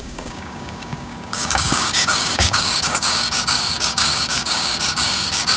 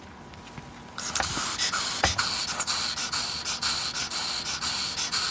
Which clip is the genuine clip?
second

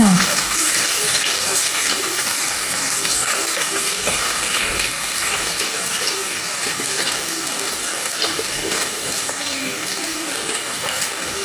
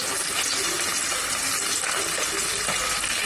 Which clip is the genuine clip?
second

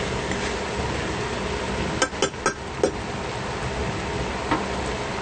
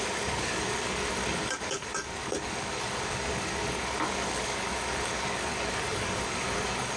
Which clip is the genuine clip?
first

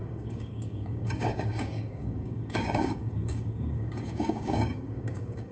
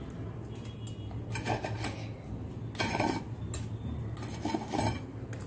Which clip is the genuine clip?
second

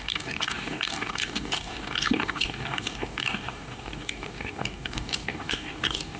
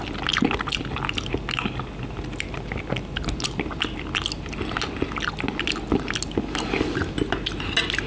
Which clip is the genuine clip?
second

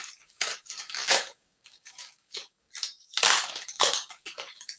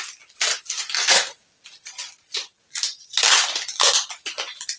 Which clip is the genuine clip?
second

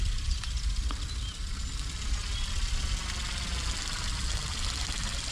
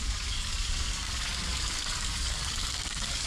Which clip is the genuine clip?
first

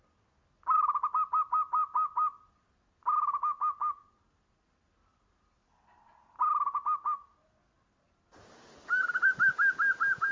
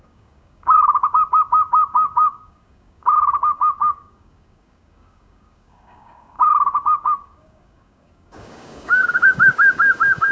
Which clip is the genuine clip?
first